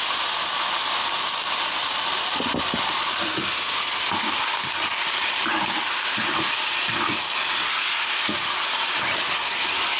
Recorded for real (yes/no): yes